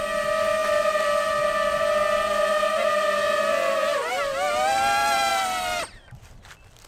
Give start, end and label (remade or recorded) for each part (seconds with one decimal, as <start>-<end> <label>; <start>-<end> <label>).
0.0-6.9 recorded